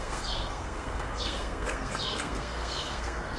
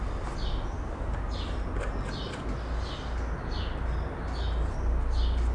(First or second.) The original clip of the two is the second